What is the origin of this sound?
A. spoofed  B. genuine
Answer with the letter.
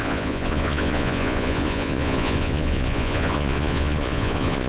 A